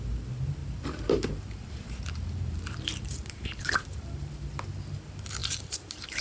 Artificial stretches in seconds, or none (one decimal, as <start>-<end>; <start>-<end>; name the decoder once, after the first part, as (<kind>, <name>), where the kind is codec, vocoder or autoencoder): 0.6-4.3 (vocoder, BigVGAN v2); 5.4-6.2